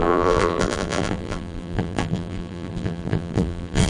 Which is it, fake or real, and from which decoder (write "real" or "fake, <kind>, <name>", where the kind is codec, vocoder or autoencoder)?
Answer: fake, vocoder, BigVGAN v2